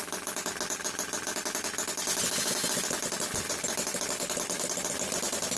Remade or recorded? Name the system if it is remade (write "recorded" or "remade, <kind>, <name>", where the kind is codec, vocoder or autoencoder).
recorded